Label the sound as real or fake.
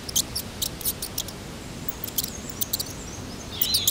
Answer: real